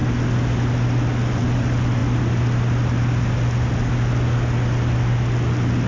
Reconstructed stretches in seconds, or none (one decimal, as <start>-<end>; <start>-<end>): none